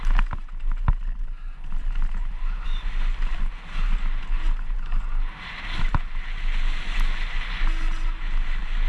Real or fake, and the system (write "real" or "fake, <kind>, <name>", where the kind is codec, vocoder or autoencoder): real